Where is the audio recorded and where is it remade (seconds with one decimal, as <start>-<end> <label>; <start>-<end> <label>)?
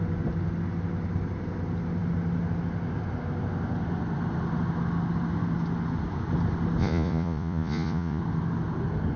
0.0-6.8 recorded; 6.8-8.2 remade; 8.2-9.2 recorded